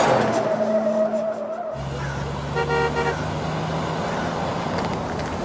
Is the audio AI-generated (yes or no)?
no